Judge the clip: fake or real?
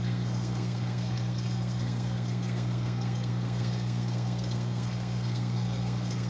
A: fake